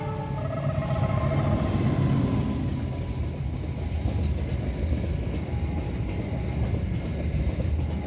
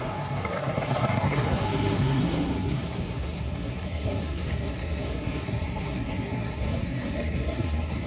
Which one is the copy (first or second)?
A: second